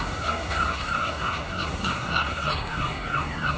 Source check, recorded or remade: remade